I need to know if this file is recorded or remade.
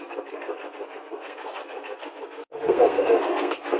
remade